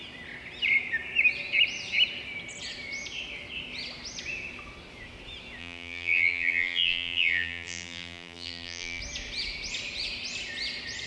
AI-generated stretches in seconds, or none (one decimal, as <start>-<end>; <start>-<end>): 5.6-9.0

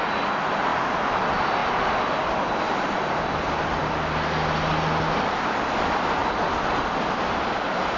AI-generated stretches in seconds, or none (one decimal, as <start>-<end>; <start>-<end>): none

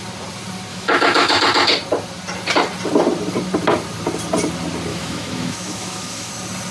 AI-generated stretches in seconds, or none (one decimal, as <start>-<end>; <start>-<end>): 0.7-1.4; 4.9-6.3

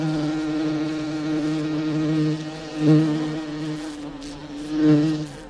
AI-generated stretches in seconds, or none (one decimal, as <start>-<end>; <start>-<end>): none